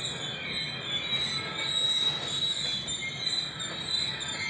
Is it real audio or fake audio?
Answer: real